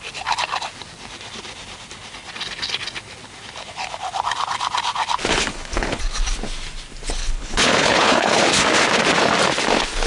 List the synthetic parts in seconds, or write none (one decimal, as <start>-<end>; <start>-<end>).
5.3-6.0; 7.2-8.4